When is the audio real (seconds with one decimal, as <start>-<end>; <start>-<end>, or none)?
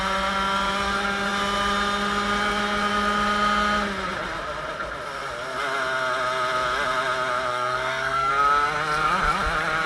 0.0-7.5; 8.3-9.9